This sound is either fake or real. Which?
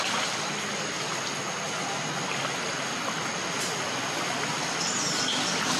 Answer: real